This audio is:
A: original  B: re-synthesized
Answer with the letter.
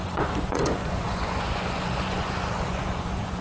B